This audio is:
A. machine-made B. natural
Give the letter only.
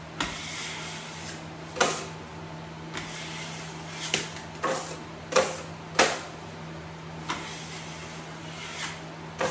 B